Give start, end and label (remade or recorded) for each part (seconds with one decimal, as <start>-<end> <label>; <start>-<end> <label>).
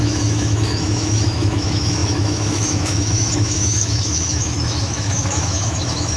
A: 0.0-6.2 remade